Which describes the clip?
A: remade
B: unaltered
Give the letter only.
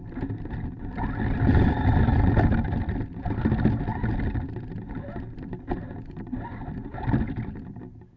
B